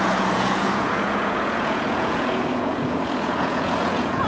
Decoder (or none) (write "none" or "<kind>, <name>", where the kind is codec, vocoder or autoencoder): vocoder, Vocos